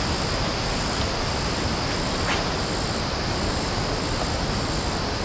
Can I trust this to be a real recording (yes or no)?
yes